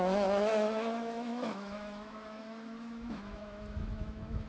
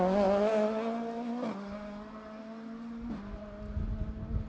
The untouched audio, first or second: second